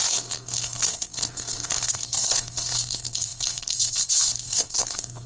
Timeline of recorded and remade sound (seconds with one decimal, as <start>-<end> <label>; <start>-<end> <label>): 0.0-5.3 remade